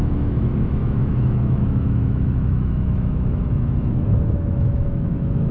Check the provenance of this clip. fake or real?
fake